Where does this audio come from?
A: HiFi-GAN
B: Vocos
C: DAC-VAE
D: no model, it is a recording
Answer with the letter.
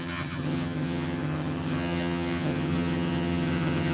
A